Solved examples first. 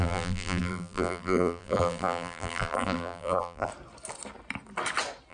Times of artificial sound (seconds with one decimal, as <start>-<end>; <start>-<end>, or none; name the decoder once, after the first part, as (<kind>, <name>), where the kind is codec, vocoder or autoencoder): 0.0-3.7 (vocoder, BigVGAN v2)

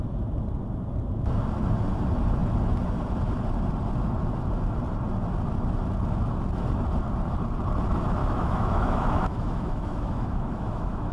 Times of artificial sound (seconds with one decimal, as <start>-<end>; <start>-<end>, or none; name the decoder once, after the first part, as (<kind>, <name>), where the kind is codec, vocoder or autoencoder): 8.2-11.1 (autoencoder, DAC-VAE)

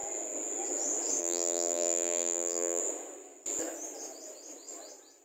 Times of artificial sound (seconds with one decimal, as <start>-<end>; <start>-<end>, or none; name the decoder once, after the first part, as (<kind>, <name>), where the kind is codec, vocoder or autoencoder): 1.2-2.8 (vocoder, BigVGAN v2)